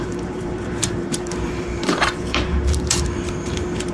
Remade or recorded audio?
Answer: remade